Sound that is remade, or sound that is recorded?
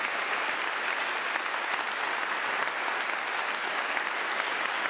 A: recorded